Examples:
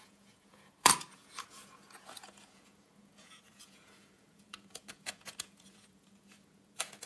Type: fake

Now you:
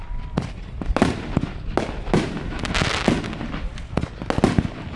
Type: real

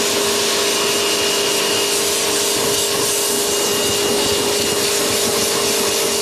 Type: real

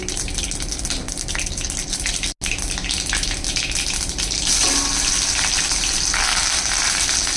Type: real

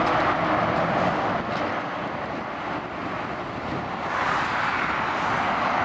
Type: real